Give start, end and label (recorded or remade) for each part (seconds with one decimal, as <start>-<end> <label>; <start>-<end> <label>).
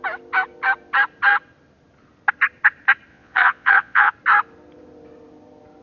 0.0-3.1 recorded; 3.1-4.1 remade; 4.1-5.8 recorded